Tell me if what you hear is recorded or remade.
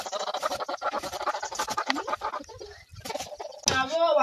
recorded